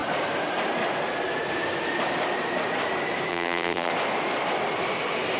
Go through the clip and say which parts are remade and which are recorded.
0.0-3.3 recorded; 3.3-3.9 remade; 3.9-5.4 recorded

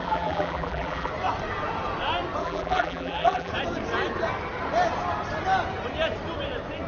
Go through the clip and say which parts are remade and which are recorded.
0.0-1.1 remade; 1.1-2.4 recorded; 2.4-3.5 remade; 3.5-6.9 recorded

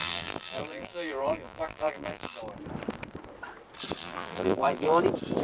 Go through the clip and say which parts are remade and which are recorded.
0.0-2.4 remade; 2.4-4.0 recorded; 4.0-5.0 remade; 5.0-5.4 recorded

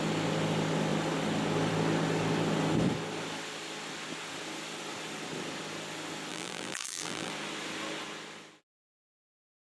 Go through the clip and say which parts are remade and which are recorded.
0.0-6.3 recorded; 6.3-7.3 remade; 7.3-9.7 recorded

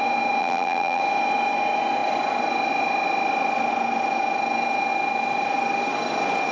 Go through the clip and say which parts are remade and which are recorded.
0.0-0.4 recorded; 0.4-1.0 remade; 1.0-6.5 recorded

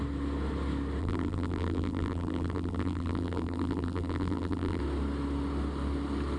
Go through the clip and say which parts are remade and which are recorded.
0.0-1.0 recorded; 1.0-4.8 remade; 4.8-6.4 recorded

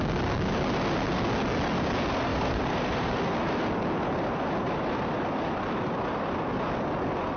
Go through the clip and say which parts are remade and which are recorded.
0.0-2.3 recorded; 2.3-3.2 remade; 3.2-7.4 recorded

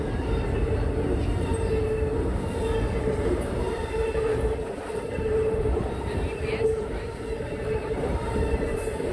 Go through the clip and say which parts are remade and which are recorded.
0.0-1.5 remade; 1.5-3.0 recorded; 3.0-9.1 remade